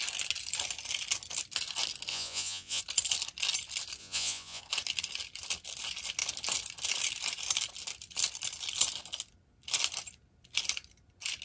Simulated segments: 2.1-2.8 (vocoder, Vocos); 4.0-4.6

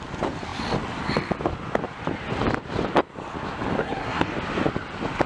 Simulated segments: 3.8-4.3 (codec, SNAC)

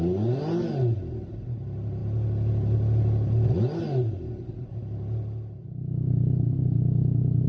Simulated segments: none

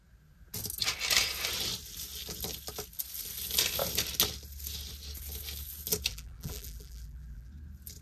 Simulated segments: 6.1-7.5 (vocoder, BigVGAN v2)

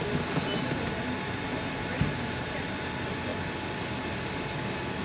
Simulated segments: none

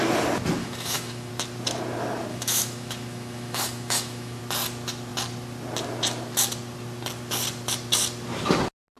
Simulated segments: 0.6-1.3 (autoencoder, DAC-VAE); 2.3-4.4

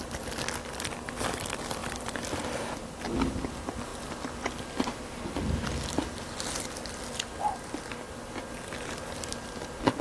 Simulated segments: none

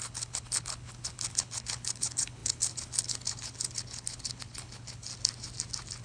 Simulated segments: 0.0-5.1 (codec, HILCodec)